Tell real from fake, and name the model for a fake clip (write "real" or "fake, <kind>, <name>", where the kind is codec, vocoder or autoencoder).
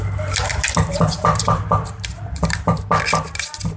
fake, vocoder, BigVGAN v2